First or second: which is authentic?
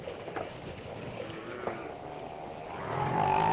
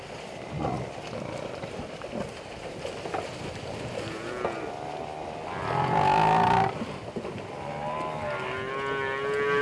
second